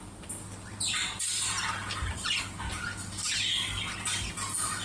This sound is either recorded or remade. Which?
recorded